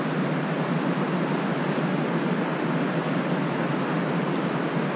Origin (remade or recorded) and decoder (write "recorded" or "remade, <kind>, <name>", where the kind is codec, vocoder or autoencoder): recorded